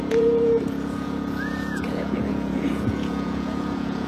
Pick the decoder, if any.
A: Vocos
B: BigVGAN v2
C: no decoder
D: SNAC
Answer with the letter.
A